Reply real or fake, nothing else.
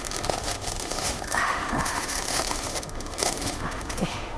fake